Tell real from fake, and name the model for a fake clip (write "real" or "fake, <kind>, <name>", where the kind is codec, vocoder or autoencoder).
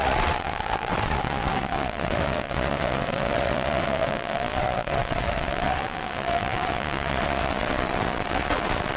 fake, vocoder, WaveNeXt